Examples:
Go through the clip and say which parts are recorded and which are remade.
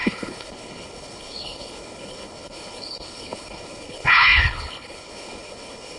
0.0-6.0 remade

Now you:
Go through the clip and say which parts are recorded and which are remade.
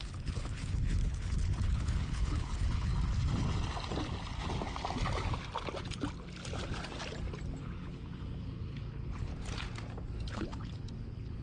0.0-2.9 remade; 2.9-7.6 recorded; 7.6-9.3 remade; 9.3-10.3 recorded; 10.3-11.4 remade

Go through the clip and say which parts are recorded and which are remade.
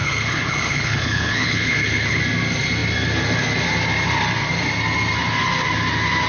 0.0-2.2 remade; 2.2-6.3 recorded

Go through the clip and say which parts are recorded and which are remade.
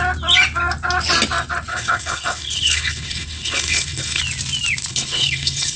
0.0-1.7 recorded; 1.7-4.2 remade; 4.2-4.9 recorded; 4.9-5.8 remade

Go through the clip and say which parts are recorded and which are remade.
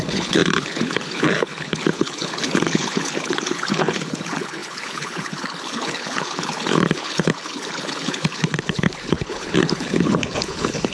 0.0-10.9 remade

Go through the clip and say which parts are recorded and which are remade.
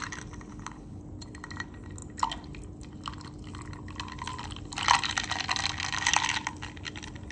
0.0-0.5 recorded; 0.5-1.0 remade; 1.0-7.3 recorded